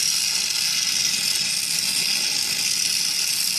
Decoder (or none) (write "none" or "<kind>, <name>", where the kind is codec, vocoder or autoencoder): none